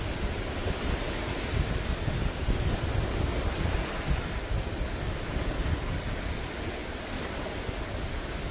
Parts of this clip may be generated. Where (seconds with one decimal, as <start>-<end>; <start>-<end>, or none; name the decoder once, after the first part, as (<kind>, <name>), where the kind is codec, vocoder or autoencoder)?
none